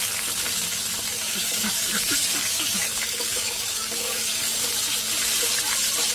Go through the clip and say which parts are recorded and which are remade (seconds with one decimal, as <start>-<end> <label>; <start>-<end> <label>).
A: 0.0-1.1 recorded; 1.1-4.8 remade; 4.8-6.1 recorded